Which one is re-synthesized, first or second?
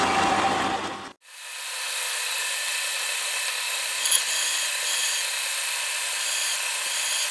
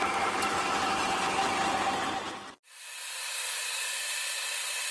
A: second